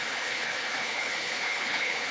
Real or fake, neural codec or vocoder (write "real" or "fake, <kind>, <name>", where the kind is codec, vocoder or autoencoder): fake, codec, HILCodec